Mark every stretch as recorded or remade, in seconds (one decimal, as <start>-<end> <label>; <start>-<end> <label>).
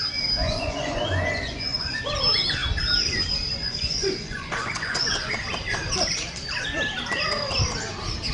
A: 0.0-0.4 recorded; 0.4-2.0 remade; 2.0-3.6 recorded; 3.6-5.3 remade; 5.3-8.3 recorded